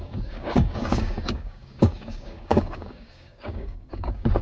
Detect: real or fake fake